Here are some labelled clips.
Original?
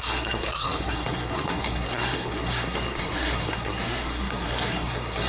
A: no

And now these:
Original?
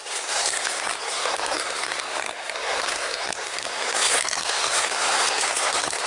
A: no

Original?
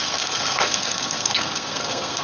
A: no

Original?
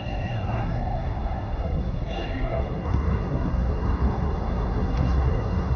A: no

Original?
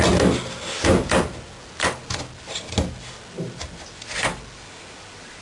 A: yes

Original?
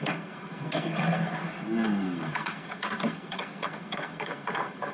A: no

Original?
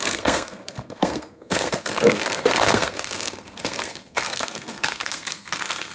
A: no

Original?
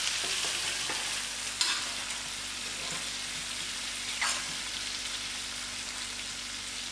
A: yes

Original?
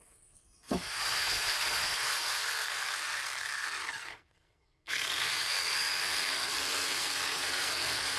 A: no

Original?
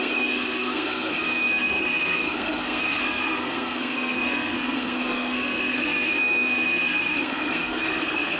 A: no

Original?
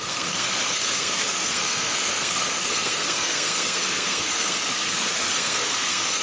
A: no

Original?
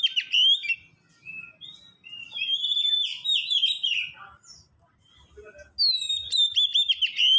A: yes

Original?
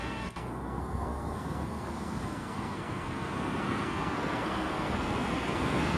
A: no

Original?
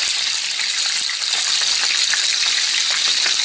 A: yes